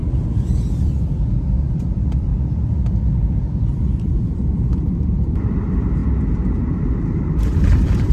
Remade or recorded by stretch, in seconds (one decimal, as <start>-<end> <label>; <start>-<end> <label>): 0.0-1.7 recorded; 1.7-2.3 remade; 2.3-4.0 recorded; 4.0-6.0 remade; 6.0-6.7 recorded; 6.7-8.1 remade